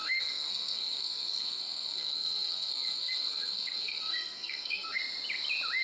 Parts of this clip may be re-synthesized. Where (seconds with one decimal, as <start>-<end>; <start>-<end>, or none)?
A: 0.0-5.0